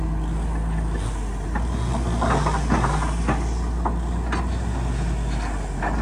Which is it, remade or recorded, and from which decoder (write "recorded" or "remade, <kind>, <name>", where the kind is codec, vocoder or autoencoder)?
recorded